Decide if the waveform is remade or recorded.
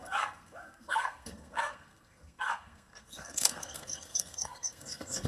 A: remade